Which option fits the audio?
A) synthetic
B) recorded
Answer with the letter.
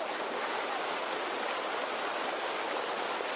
B